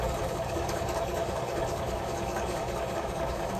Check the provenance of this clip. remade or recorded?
remade